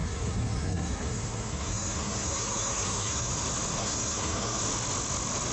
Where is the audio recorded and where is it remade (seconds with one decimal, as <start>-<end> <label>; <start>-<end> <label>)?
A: 0.0-3.3 remade; 3.3-3.8 recorded; 3.8-4.6 remade; 4.6-5.5 recorded